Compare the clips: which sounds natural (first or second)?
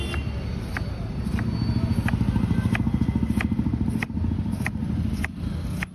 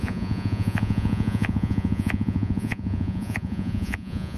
first